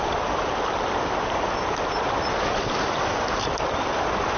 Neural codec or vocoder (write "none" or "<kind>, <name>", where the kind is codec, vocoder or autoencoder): none